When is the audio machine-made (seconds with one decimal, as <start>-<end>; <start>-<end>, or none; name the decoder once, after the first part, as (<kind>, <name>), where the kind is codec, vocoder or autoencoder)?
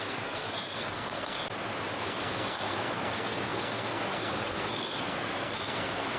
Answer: 0.0-1.4 (codec, SNAC); 2.0-6.2